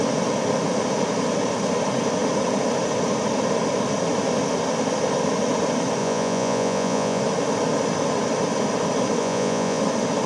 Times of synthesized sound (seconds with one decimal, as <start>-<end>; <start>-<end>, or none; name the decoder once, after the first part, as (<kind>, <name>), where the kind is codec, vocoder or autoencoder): 6.0-7.2 (vocoder, Vocos); 9.2-9.8